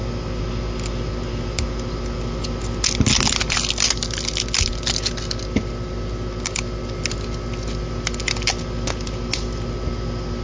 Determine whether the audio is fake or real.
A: real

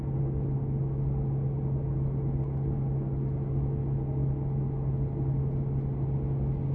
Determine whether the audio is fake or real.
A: real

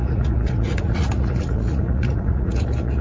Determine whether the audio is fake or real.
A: fake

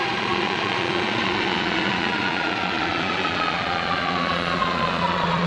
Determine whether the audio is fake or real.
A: fake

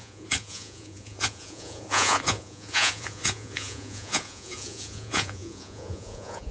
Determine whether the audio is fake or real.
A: fake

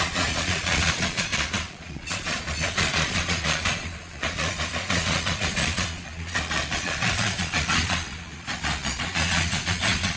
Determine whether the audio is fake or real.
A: fake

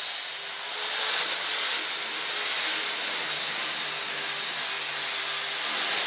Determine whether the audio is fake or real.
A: real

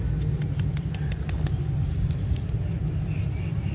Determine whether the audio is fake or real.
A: real